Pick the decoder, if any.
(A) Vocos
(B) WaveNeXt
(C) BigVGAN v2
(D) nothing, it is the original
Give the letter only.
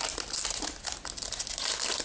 D